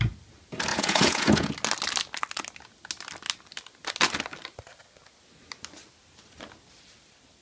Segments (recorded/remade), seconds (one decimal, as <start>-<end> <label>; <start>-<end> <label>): 0.0-0.7 recorded; 0.7-1.5 remade; 1.5-7.4 recorded